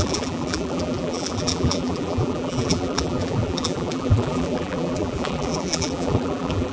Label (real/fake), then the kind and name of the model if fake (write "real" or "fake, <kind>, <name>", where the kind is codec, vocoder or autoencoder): fake, vocoder, BigVGAN v2